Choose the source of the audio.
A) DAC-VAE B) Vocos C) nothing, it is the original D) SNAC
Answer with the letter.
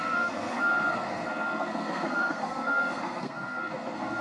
D